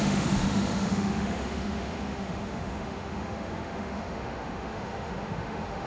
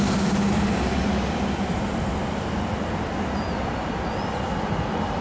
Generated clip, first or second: first